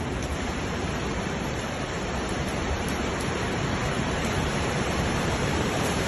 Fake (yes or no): yes